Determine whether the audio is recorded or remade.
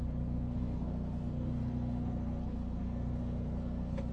remade